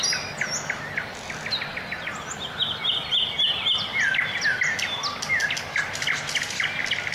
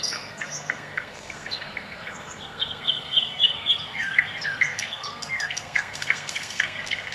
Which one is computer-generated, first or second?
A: second